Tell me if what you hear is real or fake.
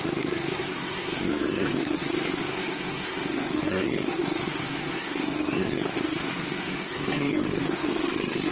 fake